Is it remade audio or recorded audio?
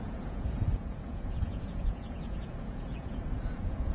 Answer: remade